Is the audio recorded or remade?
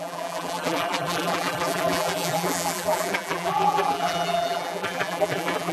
remade